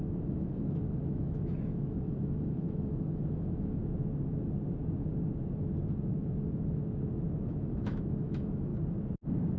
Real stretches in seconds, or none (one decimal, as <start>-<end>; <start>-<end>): 3.8-7.5; 8.7-9.6